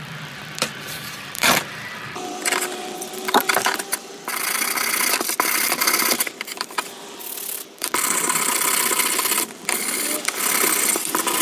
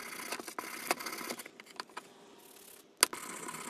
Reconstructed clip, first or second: first